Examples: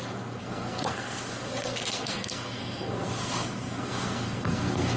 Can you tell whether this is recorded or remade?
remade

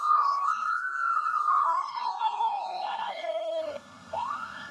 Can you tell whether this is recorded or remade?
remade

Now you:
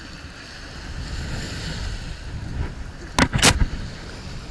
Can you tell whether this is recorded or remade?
recorded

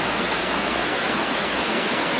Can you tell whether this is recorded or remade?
remade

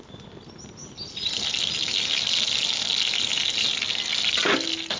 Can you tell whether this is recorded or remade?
recorded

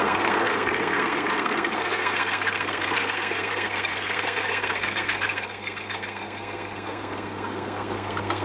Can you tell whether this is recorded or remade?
remade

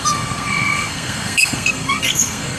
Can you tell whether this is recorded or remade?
remade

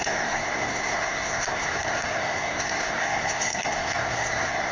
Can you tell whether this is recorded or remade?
remade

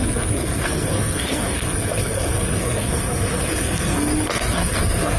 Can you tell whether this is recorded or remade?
remade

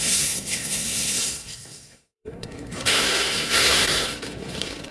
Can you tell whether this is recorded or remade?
remade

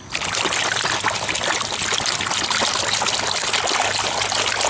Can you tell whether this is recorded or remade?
recorded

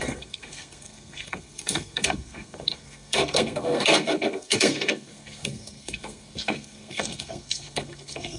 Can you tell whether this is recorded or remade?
remade